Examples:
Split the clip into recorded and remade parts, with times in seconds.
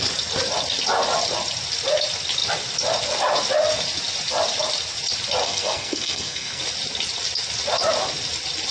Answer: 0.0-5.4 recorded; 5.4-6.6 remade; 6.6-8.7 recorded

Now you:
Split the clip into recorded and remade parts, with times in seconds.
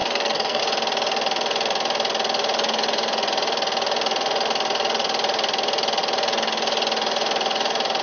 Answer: 0.0-0.6 remade; 0.6-8.0 recorded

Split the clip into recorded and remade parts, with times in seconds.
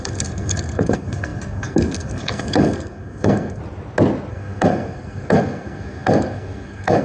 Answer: 0.0-3.6 remade; 3.6-4.3 recorded; 4.3-7.0 remade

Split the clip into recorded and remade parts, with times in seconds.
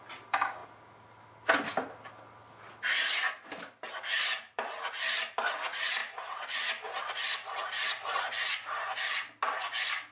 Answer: 0.0-10.1 recorded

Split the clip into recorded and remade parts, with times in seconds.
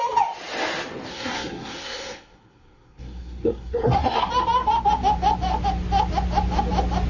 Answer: 0.0-1.1 recorded; 1.1-4.3 remade; 4.3-7.1 recorded